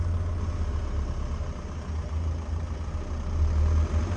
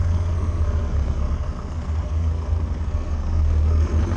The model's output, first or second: second